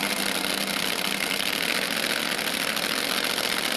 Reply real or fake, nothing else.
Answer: real